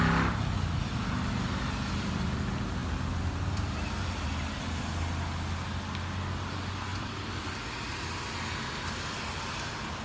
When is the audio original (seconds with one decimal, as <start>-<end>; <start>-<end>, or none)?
0.0-6.9; 7.7-10.0

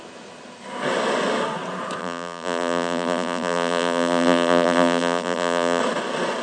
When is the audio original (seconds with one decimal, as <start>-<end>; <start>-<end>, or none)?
0.0-2.0; 5.8-6.4